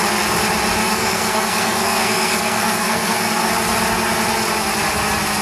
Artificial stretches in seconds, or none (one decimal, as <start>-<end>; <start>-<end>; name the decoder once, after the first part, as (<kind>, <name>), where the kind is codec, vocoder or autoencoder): 0.8-3.5 (codec, SNAC)